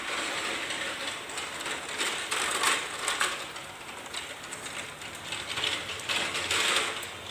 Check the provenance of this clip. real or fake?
real